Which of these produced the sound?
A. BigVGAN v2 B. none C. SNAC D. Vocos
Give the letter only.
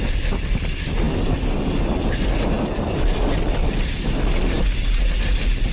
B